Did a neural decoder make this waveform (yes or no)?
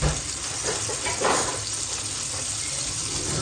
no